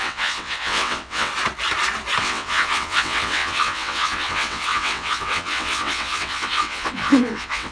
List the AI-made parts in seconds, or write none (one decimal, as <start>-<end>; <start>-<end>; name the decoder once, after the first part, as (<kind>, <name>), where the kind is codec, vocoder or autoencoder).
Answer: 0.0-1.3 (vocoder, WaveNeXt); 2.2-7.7